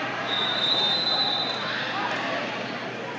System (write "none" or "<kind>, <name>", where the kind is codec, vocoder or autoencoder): none